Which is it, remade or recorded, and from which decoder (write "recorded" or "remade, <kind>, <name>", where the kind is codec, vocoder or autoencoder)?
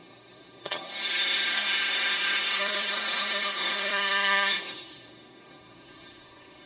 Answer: remade, codec, SNAC